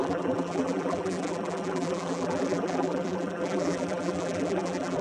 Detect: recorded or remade remade